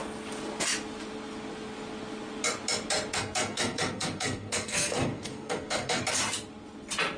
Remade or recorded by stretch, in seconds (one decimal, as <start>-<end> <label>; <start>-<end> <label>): 0.0-3.1 recorded; 3.1-6.0 remade; 6.0-7.2 recorded